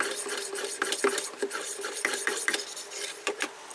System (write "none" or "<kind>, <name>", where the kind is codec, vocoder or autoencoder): vocoder, BigVGAN v2